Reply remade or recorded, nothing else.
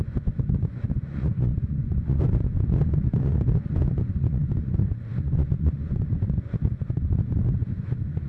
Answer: remade